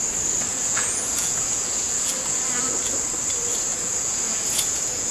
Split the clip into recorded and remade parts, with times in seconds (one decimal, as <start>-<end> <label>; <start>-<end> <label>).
0.0-0.5 recorded; 0.5-2.1 remade; 2.1-3.7 recorded; 3.7-5.1 remade